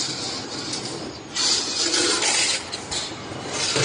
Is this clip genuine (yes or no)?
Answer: yes